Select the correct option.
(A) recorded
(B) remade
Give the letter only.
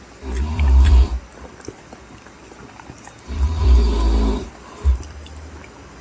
B